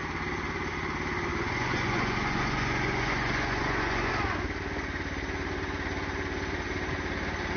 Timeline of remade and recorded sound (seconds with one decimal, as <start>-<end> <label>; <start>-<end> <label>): 0.0-1.3 recorded; 1.3-4.1 remade; 4.1-7.6 recorded